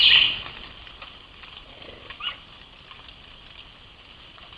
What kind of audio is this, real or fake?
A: real